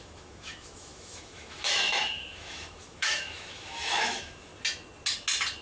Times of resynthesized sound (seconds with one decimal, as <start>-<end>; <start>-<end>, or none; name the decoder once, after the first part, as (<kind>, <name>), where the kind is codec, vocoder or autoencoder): 0.0-4.5 (autoencoder, DAC-VAE)